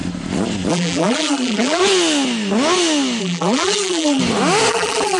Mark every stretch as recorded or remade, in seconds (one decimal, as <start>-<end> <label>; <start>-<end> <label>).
0.0-0.7 recorded; 0.7-1.8 remade; 1.8-3.2 recorded; 3.2-4.2 remade; 4.2-4.7 recorded; 4.7-5.2 remade